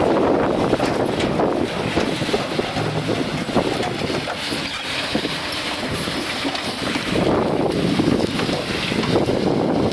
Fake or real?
real